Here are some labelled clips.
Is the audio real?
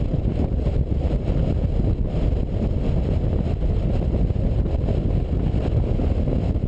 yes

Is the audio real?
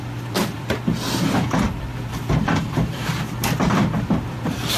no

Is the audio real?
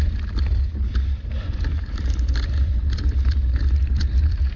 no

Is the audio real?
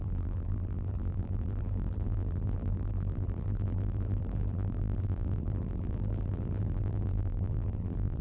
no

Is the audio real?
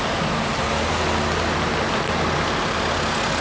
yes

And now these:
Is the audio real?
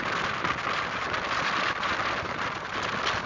yes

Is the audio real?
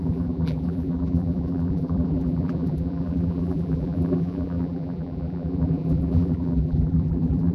no